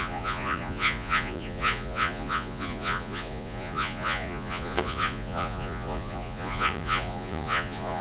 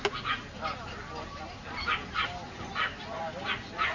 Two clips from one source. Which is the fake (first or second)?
first